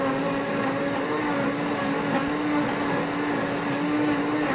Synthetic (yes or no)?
no